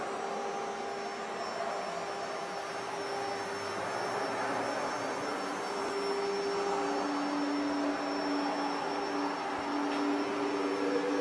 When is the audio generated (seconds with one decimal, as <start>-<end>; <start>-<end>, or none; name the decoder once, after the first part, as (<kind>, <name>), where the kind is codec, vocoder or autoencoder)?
none